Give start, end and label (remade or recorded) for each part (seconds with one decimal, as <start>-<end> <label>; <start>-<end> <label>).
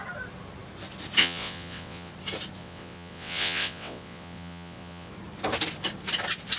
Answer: 0.0-1.2 recorded; 1.2-2.1 remade; 2.1-2.6 recorded; 2.6-5.1 remade; 5.1-6.6 recorded